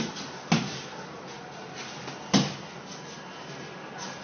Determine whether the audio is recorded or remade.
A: recorded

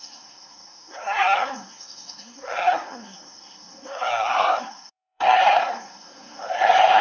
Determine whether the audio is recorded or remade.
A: remade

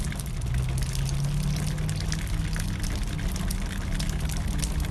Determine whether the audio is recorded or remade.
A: recorded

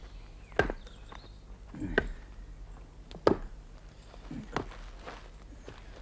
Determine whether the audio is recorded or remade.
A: recorded